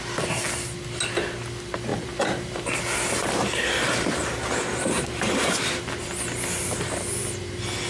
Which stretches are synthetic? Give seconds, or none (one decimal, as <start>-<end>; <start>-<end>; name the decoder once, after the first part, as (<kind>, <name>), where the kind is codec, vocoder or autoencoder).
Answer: 1.9-2.8 (vocoder, BigVGAN v2); 3.2-5.8